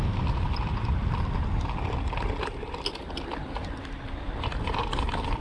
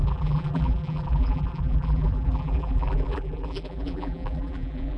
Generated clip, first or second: second